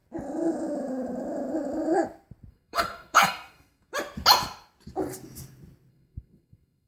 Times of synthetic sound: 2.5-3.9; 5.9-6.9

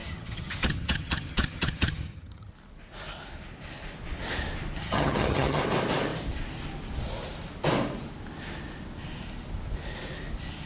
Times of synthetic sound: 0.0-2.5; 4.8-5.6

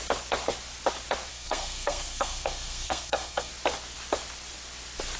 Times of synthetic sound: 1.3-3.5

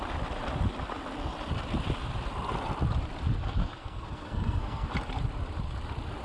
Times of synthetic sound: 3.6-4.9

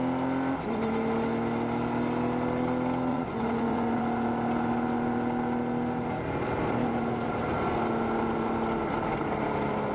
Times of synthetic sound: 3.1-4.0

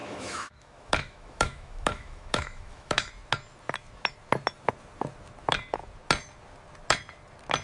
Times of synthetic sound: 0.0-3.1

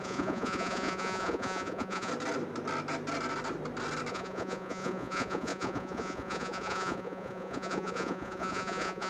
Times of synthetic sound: 0.0-2.1; 4.1-9.1